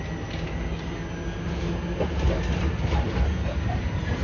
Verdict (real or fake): real